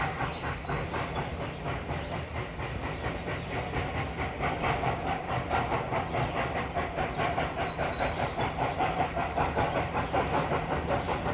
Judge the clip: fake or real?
fake